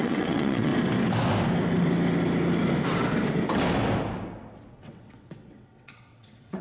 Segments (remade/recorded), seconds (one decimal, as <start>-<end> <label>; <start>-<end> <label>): 0.0-0.7 remade; 0.7-4.7 recorded; 4.7-6.6 remade